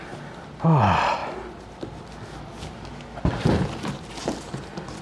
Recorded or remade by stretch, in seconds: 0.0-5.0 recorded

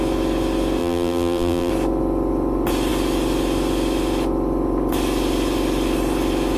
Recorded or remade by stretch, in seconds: 0.0-0.8 recorded; 0.8-1.7 remade; 1.7-6.6 recorded

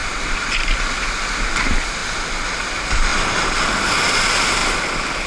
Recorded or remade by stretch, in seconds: 0.0-0.8 remade; 0.8-5.3 recorded

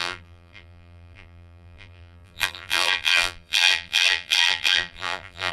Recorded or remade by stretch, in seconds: 0.0-5.5 remade

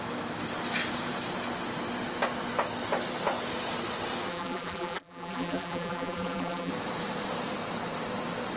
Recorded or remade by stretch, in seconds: 0.0-4.3 recorded; 4.3-6.7 remade; 6.7-8.6 recorded

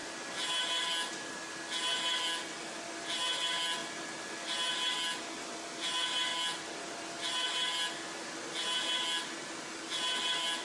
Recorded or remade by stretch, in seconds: 0.0-10.6 recorded

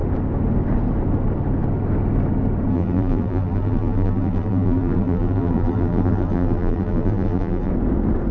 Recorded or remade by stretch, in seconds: 0.0-2.7 recorded; 2.7-7.7 remade; 7.7-8.3 recorded